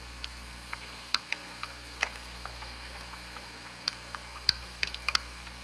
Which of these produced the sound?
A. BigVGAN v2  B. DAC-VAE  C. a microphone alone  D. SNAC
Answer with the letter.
D